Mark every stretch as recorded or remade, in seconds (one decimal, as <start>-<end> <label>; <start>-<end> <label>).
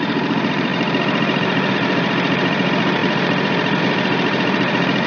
0.0-5.1 remade